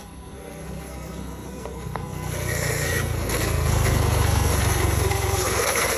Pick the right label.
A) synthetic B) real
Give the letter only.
A